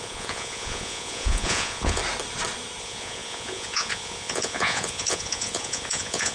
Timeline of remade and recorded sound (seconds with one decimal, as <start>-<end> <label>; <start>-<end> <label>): 0.0-2.0 remade; 2.0-2.8 recorded; 2.8-6.3 remade